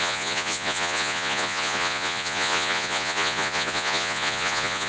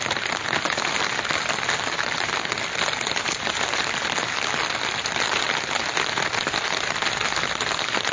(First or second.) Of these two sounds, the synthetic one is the first